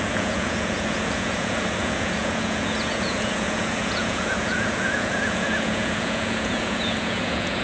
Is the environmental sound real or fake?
fake